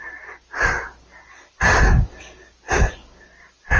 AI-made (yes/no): no